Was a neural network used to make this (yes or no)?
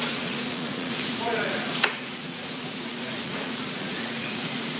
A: yes